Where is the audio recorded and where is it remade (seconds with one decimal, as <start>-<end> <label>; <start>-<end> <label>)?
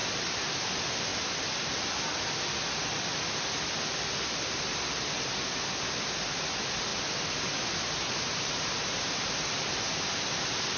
0.0-10.8 recorded